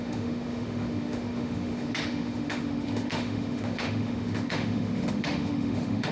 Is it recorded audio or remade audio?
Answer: remade